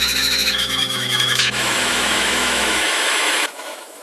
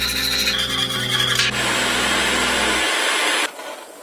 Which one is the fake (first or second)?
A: first